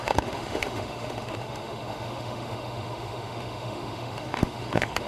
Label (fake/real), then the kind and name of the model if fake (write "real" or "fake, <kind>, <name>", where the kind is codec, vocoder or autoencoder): fake, autoencoder, DAC-VAE